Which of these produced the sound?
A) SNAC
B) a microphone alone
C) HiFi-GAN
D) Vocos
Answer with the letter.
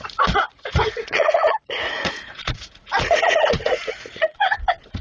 D